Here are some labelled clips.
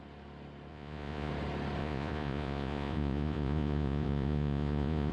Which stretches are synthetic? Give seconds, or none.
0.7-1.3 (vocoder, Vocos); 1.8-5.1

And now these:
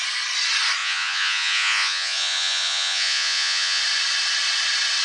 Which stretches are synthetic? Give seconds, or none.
0.8-3.8 (vocoder, Vocos)

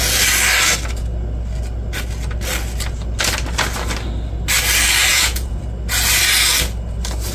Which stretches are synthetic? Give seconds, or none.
5.1-5.6 (vocoder, Vocos)

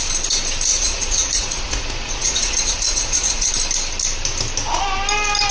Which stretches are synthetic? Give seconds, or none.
0.7-3.5 (vocoder, Vocos)